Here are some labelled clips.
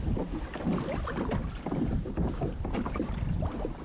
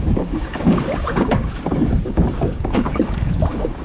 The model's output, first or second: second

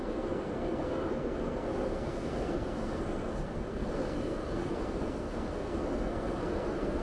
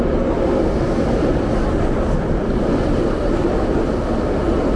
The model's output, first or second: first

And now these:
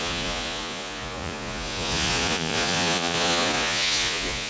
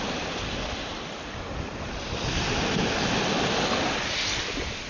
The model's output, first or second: first